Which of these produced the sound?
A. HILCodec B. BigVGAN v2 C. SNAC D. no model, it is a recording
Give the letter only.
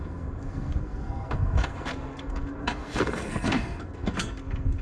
C